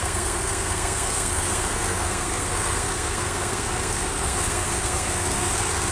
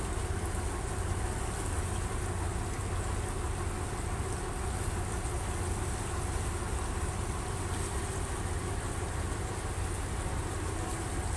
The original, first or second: second